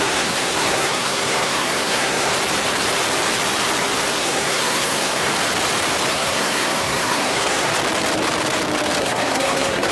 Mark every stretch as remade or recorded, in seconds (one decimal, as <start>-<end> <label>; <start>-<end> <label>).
0.0-2.3 remade; 2.3-4.1 recorded; 4.1-5.3 remade; 5.3-6.1 recorded; 6.1-7.7 remade; 7.7-9.0 recorded; 9.0-9.9 remade